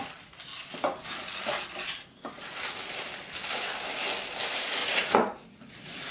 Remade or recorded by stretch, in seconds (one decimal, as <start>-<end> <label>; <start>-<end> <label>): 0.0-4.8 recorded; 4.8-6.1 remade